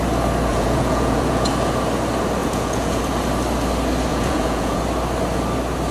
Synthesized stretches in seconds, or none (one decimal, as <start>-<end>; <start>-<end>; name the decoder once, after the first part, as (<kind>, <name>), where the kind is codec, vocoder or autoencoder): 0.5-1.5 (vocoder, Vocos); 2.4-3.0; 4.1-4.8